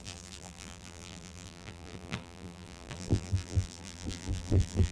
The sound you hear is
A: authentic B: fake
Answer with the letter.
B